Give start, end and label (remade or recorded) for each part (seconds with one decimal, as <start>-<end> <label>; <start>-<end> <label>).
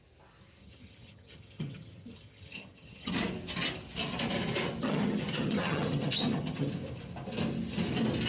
0.0-0.6 recorded; 0.6-3.1 remade; 3.1-4.8 recorded; 4.8-6.7 remade; 6.7-8.3 recorded